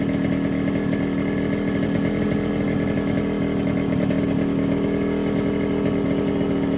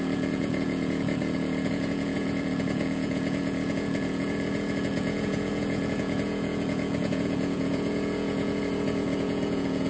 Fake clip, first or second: second